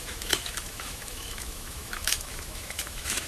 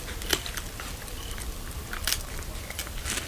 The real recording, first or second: second